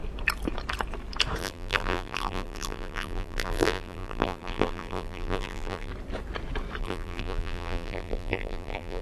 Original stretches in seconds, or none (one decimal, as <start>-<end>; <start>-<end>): 0.0-1.4; 5.9-6.8